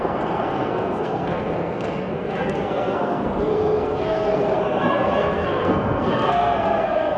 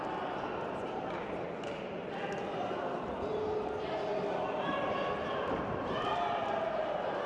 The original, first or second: second